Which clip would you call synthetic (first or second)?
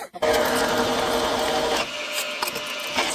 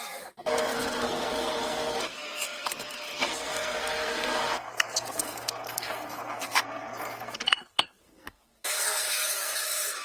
second